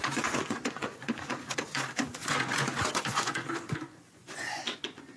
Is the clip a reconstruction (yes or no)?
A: yes